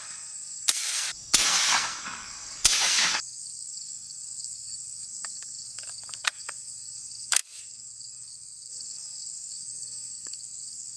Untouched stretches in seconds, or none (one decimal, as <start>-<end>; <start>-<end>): none

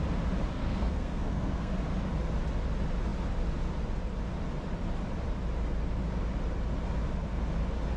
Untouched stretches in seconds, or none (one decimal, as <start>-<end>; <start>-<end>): 0.0-0.5; 1.7-8.0

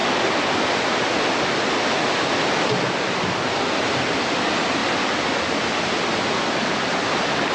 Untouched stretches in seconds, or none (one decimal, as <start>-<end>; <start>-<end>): 0.0-7.5

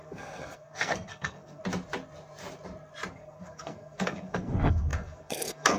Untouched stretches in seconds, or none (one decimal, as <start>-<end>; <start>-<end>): 1.6-3.1

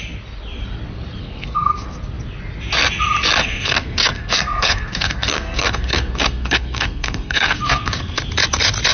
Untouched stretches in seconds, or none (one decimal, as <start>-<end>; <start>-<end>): 0.0-1.2; 2.0-3.4; 8.2-8.9

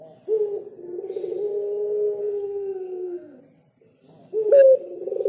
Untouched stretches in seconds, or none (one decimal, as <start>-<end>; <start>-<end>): 0.0-2.2; 3.4-5.3